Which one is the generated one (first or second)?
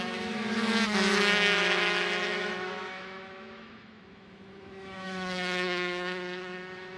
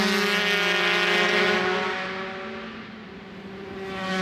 first